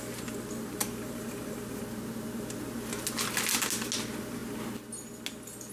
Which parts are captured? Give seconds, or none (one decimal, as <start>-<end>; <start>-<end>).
0.0-0.8; 1.8-5.7